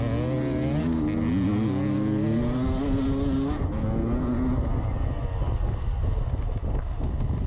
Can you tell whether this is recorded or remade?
recorded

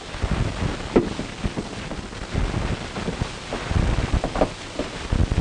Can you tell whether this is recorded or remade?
recorded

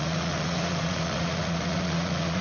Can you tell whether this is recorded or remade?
remade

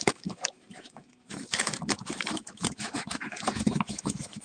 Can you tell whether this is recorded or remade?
remade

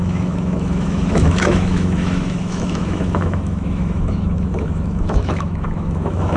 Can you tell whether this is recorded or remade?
remade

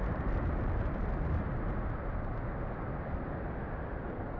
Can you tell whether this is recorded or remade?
recorded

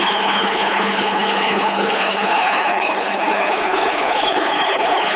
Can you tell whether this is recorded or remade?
remade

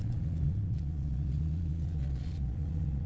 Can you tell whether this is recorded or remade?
remade